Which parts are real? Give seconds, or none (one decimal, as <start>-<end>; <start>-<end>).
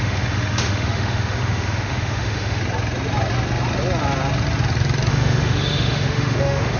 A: 2.6-5.1